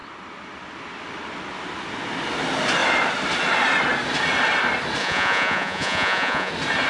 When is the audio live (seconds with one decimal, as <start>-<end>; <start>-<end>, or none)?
0.0-5.0; 6.5-6.9